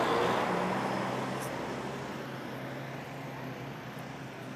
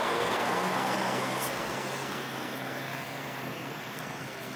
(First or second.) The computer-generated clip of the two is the second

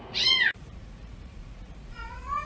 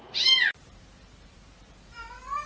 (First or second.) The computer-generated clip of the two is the first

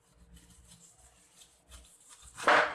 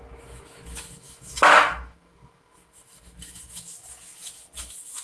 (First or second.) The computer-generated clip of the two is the second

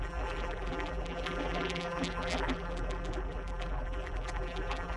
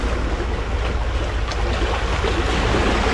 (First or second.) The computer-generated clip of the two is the first